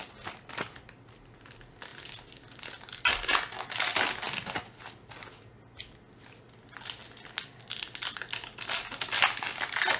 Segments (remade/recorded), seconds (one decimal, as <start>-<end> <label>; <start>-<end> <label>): 0.0-10.0 recorded